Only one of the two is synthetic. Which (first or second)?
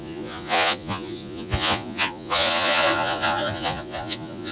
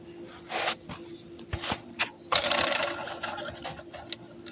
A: first